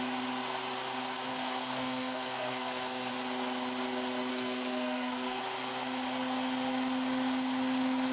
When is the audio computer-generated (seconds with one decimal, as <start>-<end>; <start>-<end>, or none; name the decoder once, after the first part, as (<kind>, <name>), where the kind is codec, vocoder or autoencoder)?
1.3-3.1 (codec, SNAC); 4.3-5.4

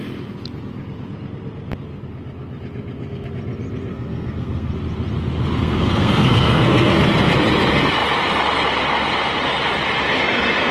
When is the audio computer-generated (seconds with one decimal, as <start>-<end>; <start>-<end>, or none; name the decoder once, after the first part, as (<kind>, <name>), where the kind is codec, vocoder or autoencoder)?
3.9-4.7 (codec, SNAC); 5.6-6.9

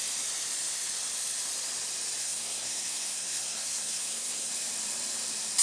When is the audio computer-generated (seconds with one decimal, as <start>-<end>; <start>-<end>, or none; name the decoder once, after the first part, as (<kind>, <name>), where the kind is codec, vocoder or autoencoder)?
2.2-4.5 (codec, SNAC)

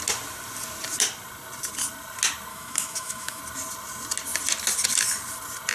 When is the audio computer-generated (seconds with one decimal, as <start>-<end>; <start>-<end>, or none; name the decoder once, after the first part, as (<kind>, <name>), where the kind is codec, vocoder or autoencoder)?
2.5-3.4 (autoencoder, DAC-VAE)

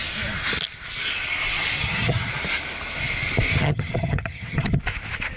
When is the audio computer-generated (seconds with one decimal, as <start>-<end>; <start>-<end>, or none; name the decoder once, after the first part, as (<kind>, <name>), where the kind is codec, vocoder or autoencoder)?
1.8-2.3 (vocoder, HiFi-GAN); 3.5-4.8

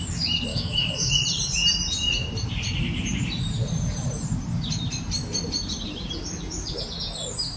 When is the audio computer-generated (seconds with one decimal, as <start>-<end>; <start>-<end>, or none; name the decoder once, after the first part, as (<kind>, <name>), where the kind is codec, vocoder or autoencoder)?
0.5-1.1 (autoencoder, DAC-VAE)